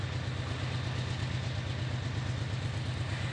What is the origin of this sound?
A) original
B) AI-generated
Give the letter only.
A